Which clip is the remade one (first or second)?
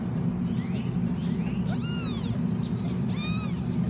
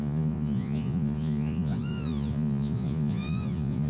second